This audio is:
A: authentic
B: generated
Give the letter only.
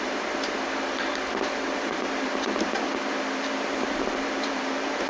B